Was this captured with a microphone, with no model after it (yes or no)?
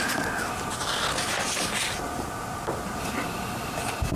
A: yes